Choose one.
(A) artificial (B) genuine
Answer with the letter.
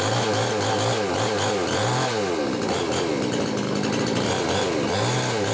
B